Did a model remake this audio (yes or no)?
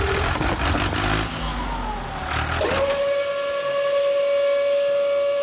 no